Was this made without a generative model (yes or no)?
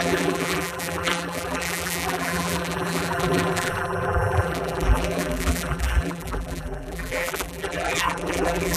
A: no